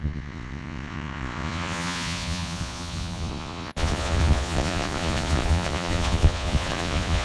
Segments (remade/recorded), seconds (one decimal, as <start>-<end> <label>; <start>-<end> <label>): 0.0-7.2 remade